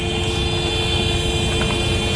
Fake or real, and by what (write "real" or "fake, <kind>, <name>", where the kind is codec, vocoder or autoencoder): real